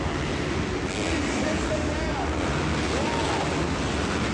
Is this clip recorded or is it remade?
recorded